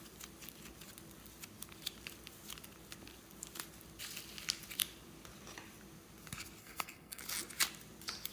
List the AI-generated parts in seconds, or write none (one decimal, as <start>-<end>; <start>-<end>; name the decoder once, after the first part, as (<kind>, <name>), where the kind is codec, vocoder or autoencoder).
6.6-7.2 (codec, SNAC)